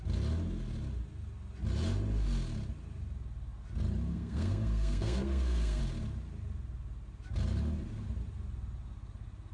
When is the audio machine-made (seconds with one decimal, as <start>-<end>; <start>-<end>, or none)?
4.1-5.8